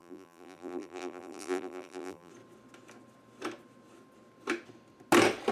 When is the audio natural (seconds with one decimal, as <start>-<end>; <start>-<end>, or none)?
2.3-5.5